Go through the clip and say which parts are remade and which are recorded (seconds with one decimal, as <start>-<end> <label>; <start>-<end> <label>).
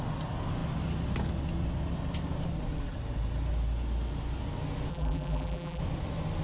0.0-4.9 recorded; 4.9-5.8 remade; 5.8-6.4 recorded